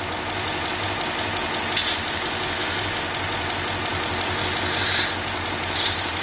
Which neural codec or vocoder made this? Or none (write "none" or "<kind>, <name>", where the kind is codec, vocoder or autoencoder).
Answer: none